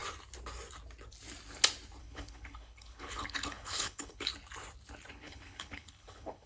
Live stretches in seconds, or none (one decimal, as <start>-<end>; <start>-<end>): 0.0-2.0; 4.3-5.1